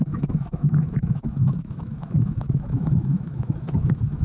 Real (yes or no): no